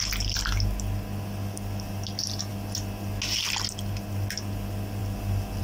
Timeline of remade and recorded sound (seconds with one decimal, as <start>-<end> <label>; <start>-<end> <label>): 0.0-5.6 recorded